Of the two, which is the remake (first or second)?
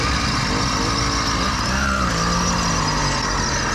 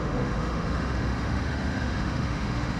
second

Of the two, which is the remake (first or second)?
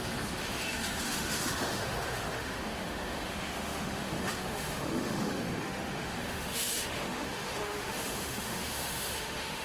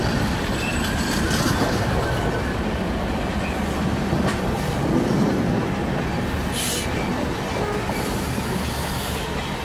first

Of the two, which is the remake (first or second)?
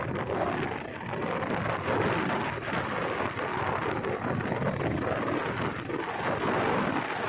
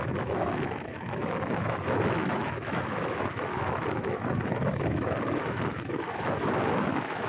second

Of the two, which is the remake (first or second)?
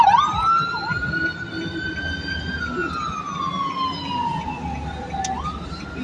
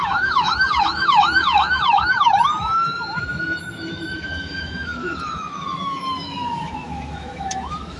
second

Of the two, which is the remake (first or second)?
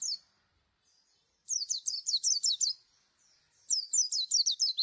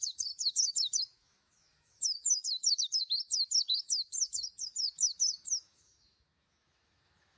second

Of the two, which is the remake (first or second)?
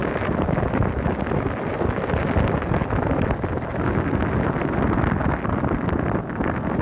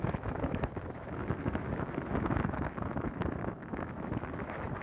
second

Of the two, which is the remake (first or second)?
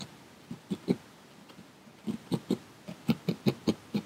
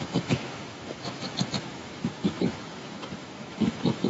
second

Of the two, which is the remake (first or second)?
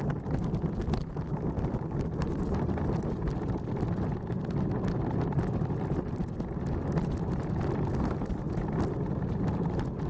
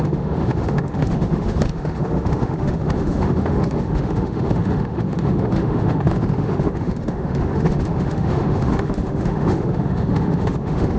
second